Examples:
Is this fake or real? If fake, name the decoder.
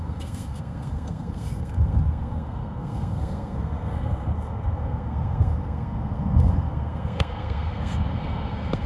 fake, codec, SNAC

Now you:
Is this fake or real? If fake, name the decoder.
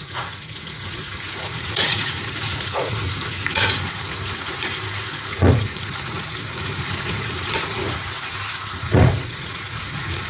fake, vocoder, Vocos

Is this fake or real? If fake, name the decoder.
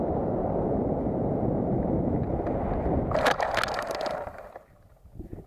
real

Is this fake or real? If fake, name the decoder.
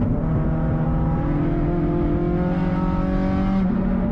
real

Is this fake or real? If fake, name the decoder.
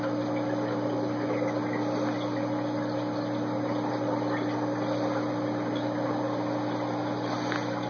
real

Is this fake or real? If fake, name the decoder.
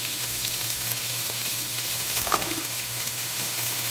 fake, autoencoder, DAC-VAE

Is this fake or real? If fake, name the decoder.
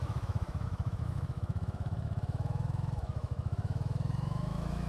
fake, autoencoder, DAC-VAE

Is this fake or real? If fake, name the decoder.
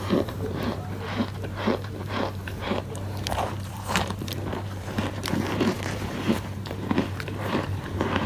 fake, vocoder, BigVGAN v2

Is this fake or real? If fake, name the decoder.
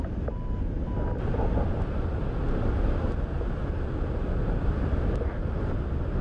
real